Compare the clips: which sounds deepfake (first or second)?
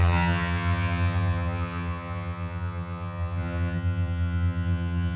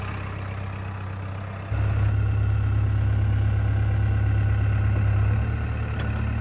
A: first